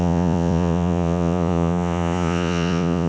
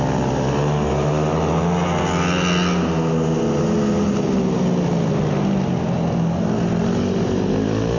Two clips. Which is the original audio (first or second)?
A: second